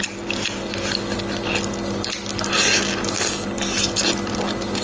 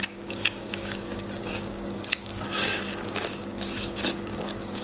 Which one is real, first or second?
first